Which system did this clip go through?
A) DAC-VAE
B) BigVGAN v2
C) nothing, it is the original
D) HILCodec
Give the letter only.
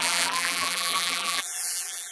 B